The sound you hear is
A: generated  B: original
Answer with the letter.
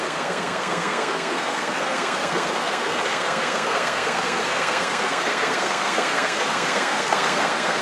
A